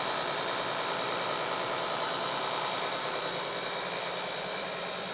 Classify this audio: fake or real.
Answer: real